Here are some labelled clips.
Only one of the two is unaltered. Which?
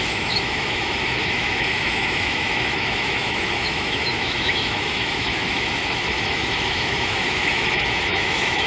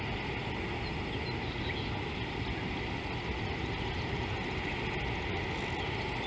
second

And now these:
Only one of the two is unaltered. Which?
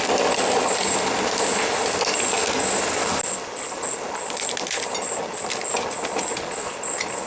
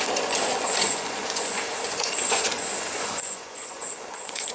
first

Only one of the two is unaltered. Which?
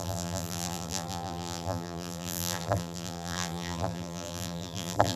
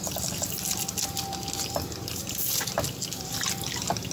second